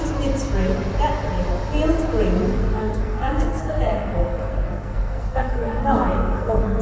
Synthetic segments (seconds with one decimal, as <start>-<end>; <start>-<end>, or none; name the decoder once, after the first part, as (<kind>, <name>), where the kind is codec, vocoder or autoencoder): 2.5-6.8 (codec, SNAC)